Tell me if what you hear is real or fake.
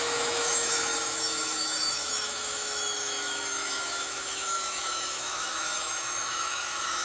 fake